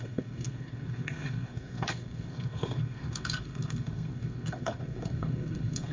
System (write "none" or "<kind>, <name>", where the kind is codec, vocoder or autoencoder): codec, SNAC